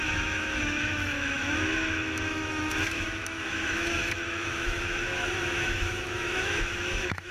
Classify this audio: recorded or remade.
remade